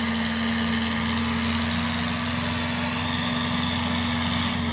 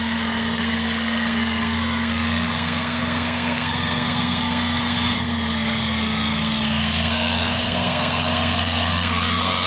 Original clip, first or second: first